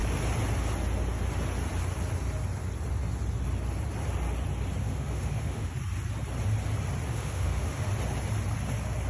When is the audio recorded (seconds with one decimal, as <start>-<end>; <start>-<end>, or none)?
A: 0.0-4.8; 5.7-7.1; 7.9-9.1